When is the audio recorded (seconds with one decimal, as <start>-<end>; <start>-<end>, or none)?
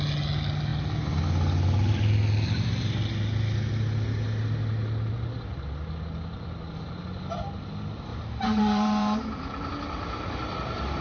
0.0-8.1; 9.7-11.0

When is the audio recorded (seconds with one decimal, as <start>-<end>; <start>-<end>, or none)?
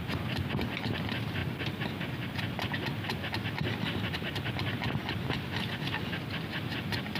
0.0-7.2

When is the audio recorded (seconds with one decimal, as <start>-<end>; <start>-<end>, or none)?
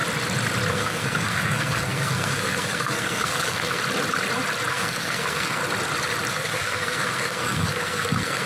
0.0-0.7; 3.8-4.7; 5.6-6.3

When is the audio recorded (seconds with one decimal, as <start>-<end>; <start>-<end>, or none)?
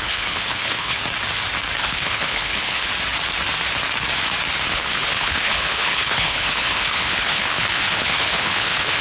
1.0-1.8; 2.9-4.7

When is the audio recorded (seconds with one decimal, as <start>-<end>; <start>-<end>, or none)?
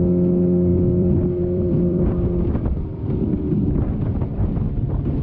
0.0-0.7; 3.8-5.2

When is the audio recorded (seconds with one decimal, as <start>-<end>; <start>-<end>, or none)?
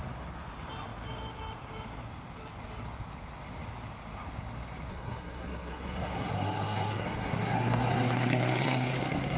0.0-4.9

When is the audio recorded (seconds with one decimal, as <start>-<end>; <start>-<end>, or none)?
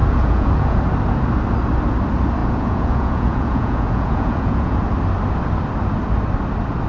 0.8-2.4; 4.8-6.9